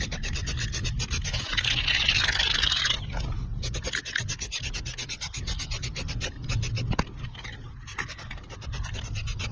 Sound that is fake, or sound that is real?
real